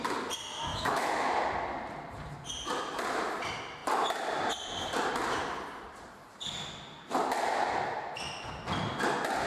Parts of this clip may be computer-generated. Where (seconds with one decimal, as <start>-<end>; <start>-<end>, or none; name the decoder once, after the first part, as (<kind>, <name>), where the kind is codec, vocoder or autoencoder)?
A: 0.7-1.3 (autoencoder, DAC-VAE)